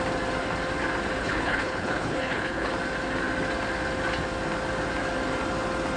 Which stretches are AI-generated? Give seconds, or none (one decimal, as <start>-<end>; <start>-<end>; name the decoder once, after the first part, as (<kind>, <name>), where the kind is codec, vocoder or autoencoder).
1.2-2.7 (codec, HILCodec)